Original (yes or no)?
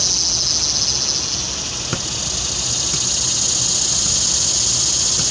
yes